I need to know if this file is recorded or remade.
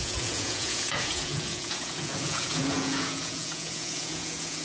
remade